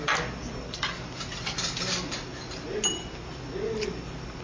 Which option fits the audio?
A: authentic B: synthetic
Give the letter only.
A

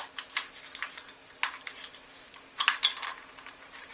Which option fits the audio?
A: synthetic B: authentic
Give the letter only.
B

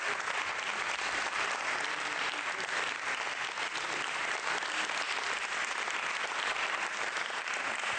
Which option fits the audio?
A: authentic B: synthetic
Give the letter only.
A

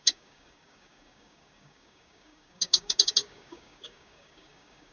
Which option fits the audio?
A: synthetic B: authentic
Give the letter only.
A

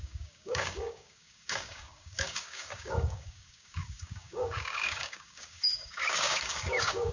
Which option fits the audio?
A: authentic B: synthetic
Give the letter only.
B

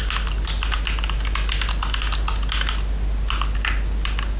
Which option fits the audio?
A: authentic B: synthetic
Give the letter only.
A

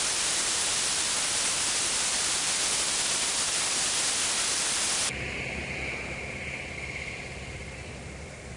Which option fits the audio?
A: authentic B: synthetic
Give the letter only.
A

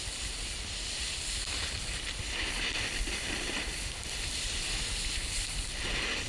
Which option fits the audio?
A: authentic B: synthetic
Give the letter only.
A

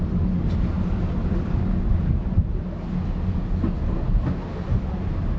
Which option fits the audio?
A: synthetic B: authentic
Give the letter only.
B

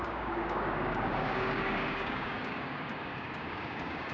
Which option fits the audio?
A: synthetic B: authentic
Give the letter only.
A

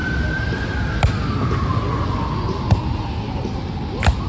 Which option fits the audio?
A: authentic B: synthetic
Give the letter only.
A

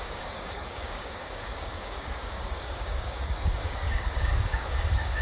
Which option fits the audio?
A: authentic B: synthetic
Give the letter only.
B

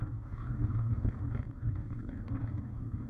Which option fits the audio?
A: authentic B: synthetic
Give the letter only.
B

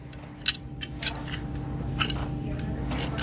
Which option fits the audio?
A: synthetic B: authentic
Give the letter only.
B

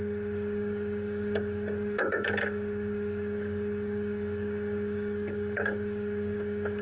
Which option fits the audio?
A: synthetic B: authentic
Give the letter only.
A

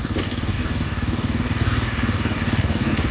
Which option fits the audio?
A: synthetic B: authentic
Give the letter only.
A